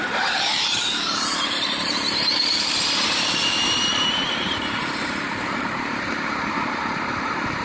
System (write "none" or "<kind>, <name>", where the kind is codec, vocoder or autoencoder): vocoder, BigVGAN v2